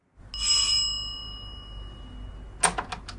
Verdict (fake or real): real